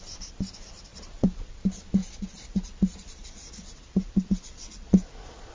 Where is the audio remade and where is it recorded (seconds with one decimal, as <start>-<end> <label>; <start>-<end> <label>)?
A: 0.0-0.9 recorded; 0.9-1.5 remade; 1.5-2.0 recorded; 2.0-5.5 remade